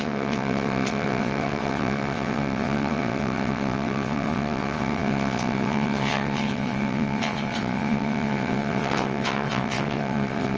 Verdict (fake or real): fake